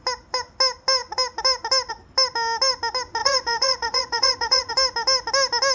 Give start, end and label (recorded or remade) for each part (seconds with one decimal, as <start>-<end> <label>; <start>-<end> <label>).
0.0-3.2 recorded; 3.2-4.7 remade; 4.7-5.7 recorded